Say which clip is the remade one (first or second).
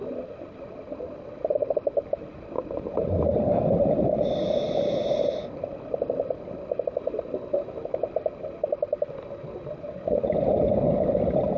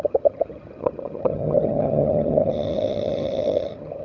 second